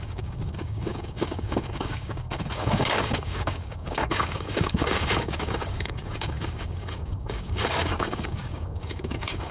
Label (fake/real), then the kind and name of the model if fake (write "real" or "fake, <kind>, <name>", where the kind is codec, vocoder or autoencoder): fake, codec, DAC